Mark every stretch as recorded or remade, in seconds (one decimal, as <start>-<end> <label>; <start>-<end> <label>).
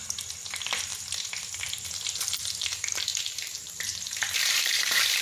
0.0-3.1 recorded; 3.1-3.7 remade; 3.7-4.4 recorded; 4.4-5.2 remade